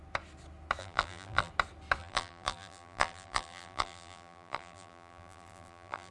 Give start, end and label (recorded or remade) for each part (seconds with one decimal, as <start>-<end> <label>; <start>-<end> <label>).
0.0-0.8 recorded; 0.8-1.5 remade; 1.5-2.0 recorded; 2.0-6.1 remade